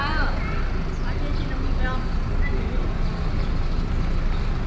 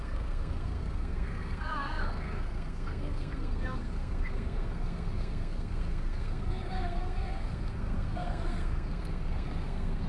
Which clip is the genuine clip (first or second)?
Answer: first